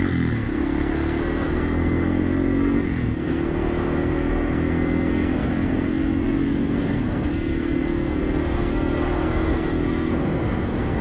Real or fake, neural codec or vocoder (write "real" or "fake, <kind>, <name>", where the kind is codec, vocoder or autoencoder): fake, codec, SNAC